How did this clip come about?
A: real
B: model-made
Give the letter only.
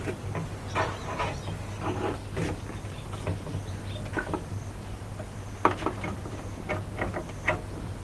A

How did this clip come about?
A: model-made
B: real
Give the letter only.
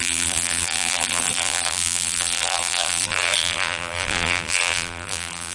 A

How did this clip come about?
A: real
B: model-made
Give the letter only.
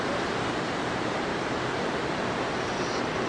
B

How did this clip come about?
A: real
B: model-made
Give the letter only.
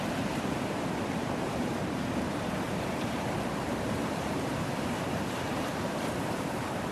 B